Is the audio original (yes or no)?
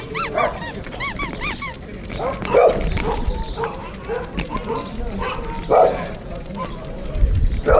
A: yes